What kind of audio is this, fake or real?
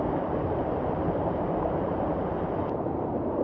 fake